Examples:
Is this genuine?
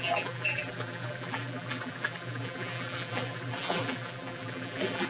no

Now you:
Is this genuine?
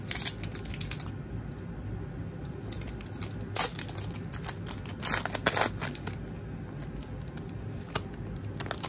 yes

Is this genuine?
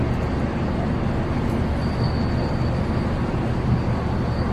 yes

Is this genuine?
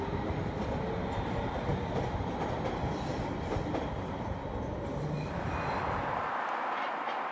yes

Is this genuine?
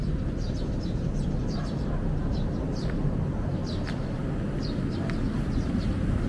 yes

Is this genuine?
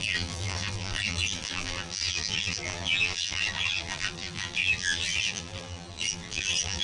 no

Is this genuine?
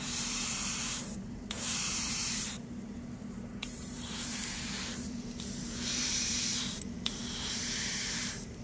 no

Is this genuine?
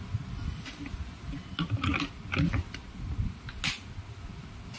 yes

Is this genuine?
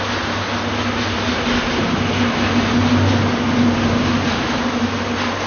yes